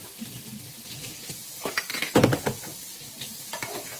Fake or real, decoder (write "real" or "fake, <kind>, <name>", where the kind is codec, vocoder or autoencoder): real